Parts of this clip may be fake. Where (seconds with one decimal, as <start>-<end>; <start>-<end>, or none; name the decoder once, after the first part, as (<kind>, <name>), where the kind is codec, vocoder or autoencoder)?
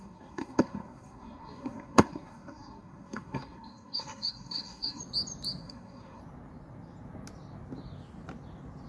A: 0.0-5.0 (codec, SNAC); 5.6-6.2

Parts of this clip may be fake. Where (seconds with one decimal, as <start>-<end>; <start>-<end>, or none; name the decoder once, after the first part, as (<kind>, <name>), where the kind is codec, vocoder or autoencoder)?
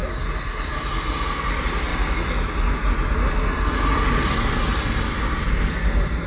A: none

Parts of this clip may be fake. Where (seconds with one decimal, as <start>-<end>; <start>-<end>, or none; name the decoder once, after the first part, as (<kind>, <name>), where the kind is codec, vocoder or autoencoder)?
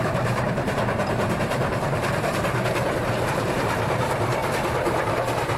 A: 0.0-5.6 (vocoder, BigVGAN v2)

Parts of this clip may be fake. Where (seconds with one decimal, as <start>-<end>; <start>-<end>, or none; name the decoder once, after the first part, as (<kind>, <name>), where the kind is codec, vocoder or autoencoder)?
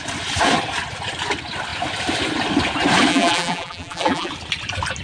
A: 3.1-4.3 (vocoder, BigVGAN v2)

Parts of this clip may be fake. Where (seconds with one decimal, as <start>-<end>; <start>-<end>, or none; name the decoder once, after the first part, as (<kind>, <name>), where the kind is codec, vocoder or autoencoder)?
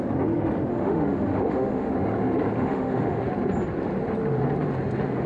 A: 0.7-1.9 (autoencoder, DAC-VAE); 2.6-3.2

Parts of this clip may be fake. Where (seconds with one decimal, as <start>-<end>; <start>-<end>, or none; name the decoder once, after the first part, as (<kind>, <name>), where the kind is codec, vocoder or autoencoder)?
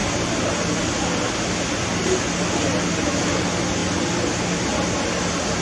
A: none